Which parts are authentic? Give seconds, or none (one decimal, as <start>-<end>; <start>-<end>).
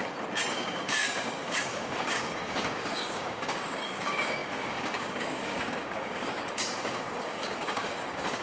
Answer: 0.0-0.5